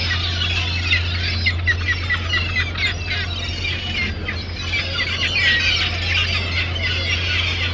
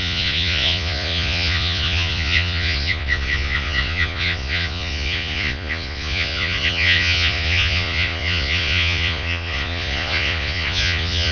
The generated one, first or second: second